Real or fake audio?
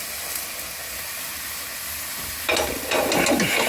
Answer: real